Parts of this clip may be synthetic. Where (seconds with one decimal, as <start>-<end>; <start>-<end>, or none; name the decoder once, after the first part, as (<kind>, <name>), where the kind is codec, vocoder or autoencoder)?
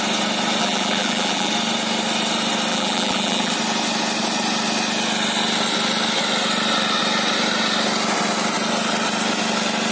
0.6-1.5 (vocoder, BigVGAN v2); 2.7-3.5